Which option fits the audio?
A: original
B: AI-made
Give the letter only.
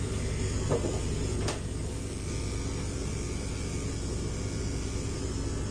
A